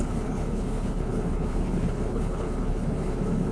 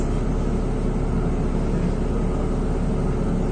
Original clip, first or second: second